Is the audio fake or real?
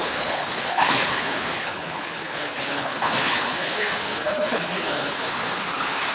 fake